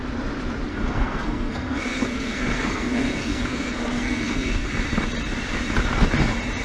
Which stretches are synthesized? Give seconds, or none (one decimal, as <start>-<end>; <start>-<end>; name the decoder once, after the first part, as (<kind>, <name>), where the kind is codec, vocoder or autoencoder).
0.7-4.7 (codec, SNAC)